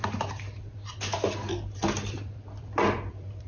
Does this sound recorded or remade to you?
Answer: remade